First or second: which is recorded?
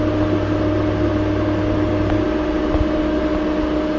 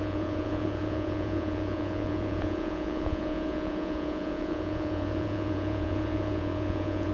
first